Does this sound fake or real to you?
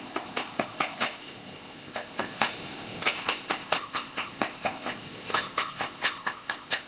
fake